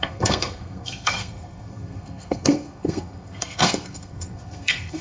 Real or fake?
fake